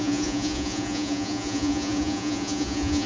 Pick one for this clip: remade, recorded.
remade